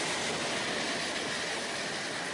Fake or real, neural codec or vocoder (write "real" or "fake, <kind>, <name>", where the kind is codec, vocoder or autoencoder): real